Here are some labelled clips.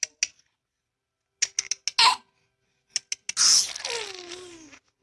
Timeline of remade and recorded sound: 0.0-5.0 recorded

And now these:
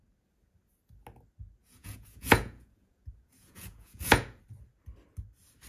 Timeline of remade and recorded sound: 0.0-1.6 recorded; 1.6-4.4 remade; 4.4-5.7 recorded

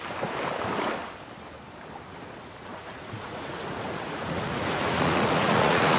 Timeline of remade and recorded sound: 0.0-2.7 recorded; 2.7-6.0 remade

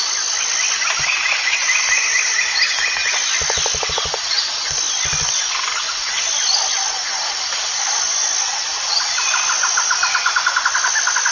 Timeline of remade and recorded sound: 0.0-11.3 recorded

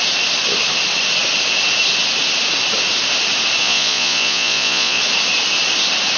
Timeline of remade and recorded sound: 0.0-3.6 recorded; 3.6-5.0 remade; 5.0-6.2 recorded

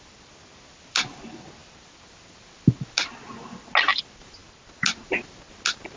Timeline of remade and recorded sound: 0.0-6.0 recorded

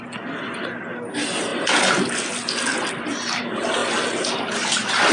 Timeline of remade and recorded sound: 0.0-5.1 recorded